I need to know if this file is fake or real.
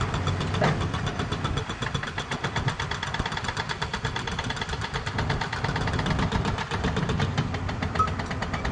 fake